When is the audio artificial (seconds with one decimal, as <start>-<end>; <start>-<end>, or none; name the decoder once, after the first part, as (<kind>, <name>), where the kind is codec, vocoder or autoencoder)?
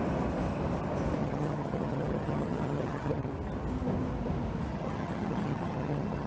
1.2-3.3 (vocoder, HiFi-GAN); 4.7-6.3